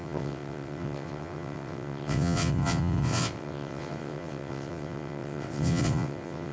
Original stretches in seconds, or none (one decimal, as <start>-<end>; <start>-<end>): none